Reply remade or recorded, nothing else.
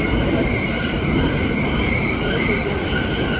remade